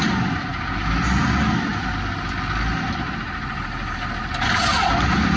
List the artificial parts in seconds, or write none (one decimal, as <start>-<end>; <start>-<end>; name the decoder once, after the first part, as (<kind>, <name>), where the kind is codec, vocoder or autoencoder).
none